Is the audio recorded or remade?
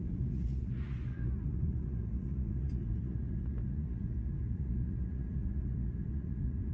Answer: remade